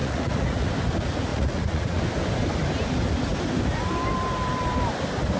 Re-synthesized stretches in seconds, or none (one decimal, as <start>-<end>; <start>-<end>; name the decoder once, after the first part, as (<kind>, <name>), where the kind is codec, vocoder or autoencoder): 0.0-0.7 (vocoder, Vocos); 1.3-2.0